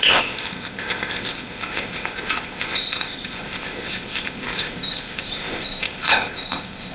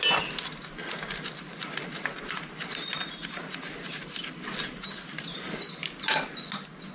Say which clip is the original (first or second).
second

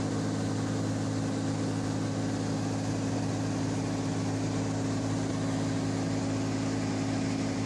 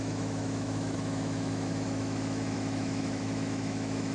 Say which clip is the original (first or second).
first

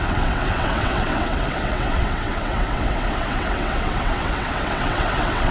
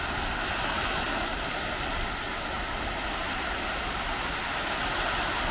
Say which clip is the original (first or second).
second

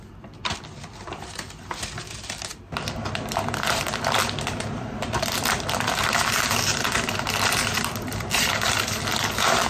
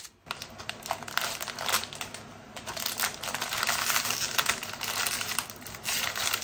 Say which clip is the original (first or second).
second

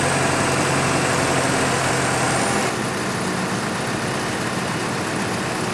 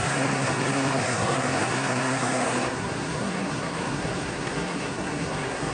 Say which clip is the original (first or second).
first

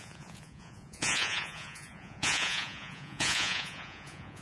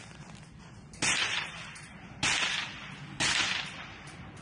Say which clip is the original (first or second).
second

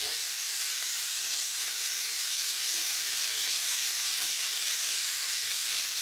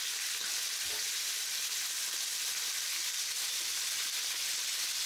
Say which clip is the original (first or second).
second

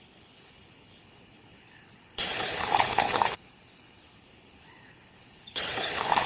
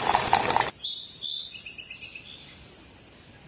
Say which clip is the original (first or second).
second